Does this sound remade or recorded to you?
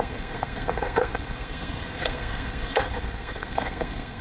remade